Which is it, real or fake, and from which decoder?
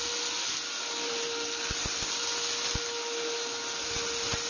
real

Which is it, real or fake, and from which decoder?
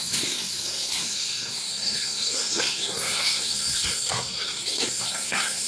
fake, codec, SNAC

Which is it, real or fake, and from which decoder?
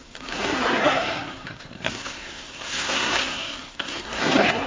fake, codec, SNAC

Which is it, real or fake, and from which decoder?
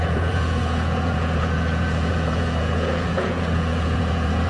fake, vocoder, Vocos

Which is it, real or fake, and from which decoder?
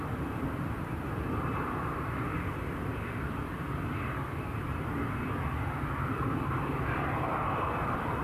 fake, vocoder, BigVGAN v2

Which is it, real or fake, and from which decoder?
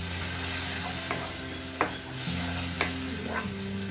real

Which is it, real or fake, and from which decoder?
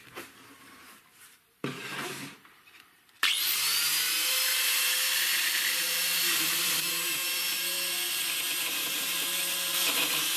fake, vocoder, BigVGAN v2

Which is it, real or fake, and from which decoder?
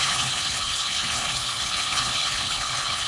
fake, codec, HILCodec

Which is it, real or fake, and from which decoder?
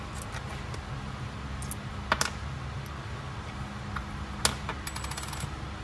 real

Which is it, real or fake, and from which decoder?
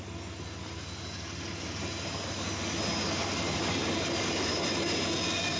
real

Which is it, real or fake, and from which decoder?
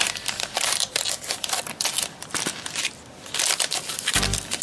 real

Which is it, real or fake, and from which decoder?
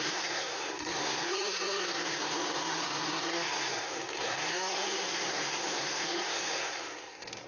fake, codec, SNAC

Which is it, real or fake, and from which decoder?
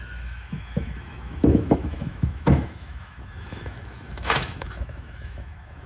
fake, autoencoder, DAC-VAE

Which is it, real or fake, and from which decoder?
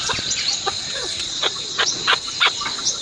fake, vocoder, Vocos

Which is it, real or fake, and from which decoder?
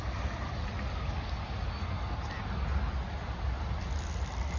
real